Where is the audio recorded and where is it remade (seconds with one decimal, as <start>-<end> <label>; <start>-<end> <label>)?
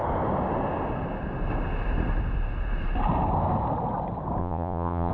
0.0-4.4 recorded; 4.4-5.1 remade